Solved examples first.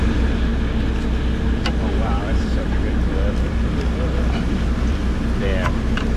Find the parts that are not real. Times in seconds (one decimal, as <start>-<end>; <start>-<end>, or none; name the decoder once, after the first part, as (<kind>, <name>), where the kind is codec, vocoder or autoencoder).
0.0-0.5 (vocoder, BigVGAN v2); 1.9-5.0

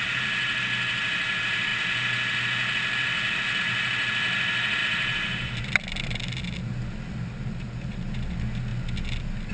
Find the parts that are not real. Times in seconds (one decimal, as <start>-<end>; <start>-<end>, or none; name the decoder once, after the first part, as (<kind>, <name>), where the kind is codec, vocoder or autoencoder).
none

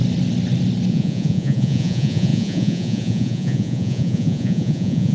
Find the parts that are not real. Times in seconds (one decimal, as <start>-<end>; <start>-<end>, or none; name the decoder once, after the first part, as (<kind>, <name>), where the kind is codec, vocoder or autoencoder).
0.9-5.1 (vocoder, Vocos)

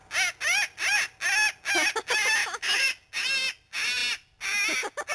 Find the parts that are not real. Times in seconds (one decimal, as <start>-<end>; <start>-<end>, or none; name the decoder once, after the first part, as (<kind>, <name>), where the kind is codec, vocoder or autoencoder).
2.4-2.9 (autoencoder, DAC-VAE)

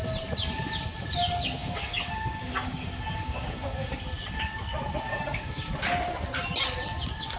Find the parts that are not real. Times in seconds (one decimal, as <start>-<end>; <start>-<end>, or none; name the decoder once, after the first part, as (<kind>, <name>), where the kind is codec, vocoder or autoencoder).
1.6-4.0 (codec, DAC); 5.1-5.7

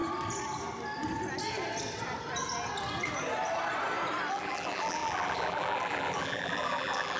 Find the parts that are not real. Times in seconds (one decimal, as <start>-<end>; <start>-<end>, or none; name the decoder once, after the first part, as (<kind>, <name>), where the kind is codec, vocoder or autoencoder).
4.3-7.2 (vocoder, BigVGAN v2)